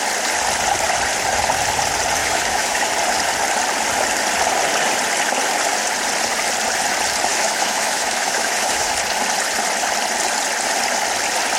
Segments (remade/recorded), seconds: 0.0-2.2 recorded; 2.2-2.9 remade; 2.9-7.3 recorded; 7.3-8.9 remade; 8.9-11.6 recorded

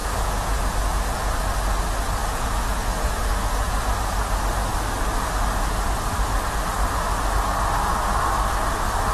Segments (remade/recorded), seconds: 0.0-0.6 remade; 0.6-2.2 recorded; 2.2-3.9 remade; 3.9-9.1 recorded

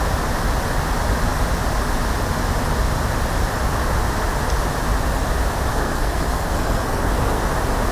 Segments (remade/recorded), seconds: 0.0-5.7 recorded; 5.7-7.4 remade; 7.4-7.9 recorded